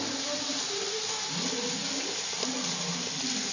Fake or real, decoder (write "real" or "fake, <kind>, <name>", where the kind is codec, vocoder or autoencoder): real